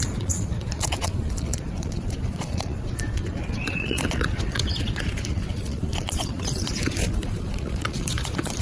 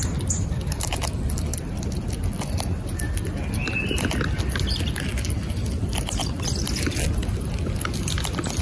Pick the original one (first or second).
second